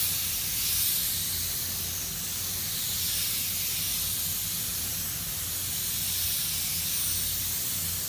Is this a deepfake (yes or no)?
no